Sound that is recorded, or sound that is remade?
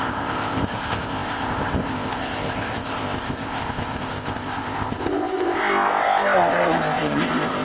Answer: remade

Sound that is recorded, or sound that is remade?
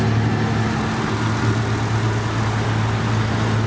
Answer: recorded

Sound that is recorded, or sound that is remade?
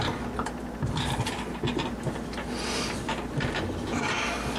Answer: recorded